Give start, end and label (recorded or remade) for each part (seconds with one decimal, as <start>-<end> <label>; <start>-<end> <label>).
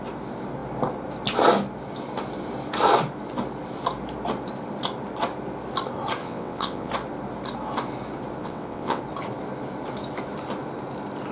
0.0-6.2 recorded; 6.2-6.9 remade; 6.9-8.4 recorded; 8.4-9.0 remade; 9.0-11.3 recorded